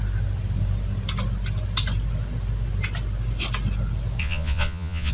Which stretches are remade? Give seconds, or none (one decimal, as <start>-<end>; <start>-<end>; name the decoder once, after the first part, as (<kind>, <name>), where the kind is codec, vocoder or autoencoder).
4.2-5.1 (vocoder, Vocos)